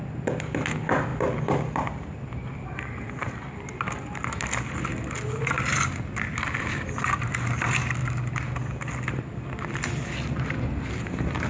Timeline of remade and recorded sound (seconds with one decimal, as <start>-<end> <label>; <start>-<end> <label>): 0.0-1.1 recorded; 1.1-2.6 remade; 2.6-3.2 recorded; 3.2-3.7 remade; 3.7-8.0 recorded; 8.0-10.8 remade; 10.8-11.5 recorded